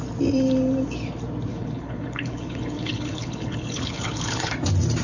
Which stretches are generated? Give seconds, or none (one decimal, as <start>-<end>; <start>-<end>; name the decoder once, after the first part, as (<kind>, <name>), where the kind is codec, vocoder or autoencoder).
1.5-4.5 (codec, HILCodec)